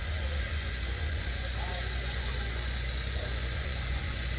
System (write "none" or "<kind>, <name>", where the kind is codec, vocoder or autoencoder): vocoder, Vocos